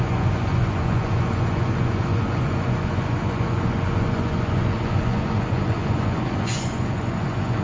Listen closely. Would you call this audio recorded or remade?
remade